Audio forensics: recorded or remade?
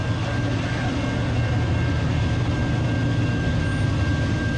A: recorded